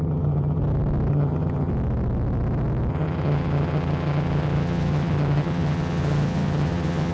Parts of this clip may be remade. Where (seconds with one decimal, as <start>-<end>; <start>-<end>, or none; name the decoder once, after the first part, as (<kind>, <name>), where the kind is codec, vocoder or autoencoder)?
0.0-0.6 (vocoder, HiFi-GAN); 1.1-1.7; 2.9-7.1